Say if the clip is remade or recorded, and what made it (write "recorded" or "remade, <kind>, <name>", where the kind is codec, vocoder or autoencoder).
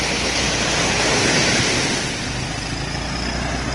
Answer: recorded